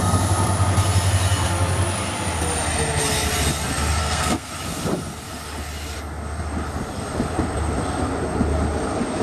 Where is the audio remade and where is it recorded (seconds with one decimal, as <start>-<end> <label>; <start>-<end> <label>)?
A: 0.0-4.0 recorded; 4.0-4.5 remade; 4.5-9.2 recorded